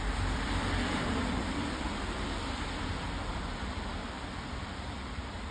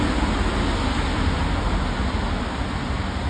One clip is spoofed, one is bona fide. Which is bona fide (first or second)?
second